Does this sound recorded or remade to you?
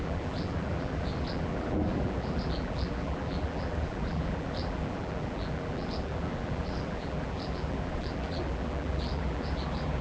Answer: remade